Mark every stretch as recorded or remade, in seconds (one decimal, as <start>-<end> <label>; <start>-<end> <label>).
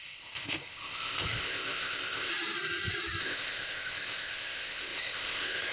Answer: 0.0-2.3 remade; 2.3-3.2 recorded; 3.2-5.7 remade